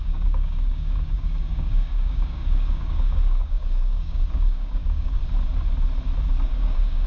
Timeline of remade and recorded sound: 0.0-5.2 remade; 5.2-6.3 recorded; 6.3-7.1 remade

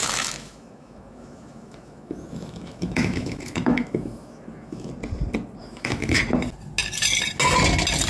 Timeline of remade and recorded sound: 0.0-4.9 remade; 4.9-5.6 recorded; 5.6-6.2 remade; 6.2-8.1 recorded

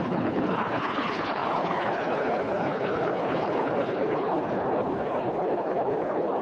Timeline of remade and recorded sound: 0.0-6.4 remade

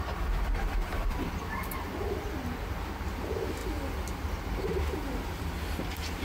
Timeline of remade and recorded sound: 0.0-0.9 recorded; 0.9-2.9 remade; 2.9-6.2 recorded

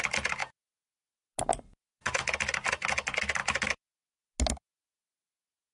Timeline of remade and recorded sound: 0.0-5.7 recorded

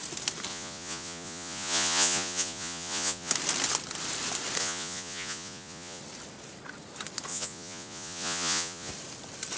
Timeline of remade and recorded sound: 0.0-0.5 recorded; 0.5-3.3 remade; 3.3-4.6 recorded; 4.6-6.0 remade; 6.0-7.3 recorded; 7.3-8.9 remade; 8.9-9.6 recorded